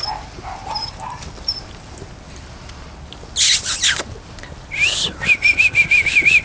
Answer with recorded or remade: recorded